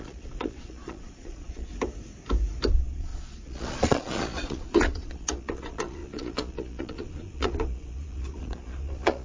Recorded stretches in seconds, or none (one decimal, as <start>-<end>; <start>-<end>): 1.7-2.7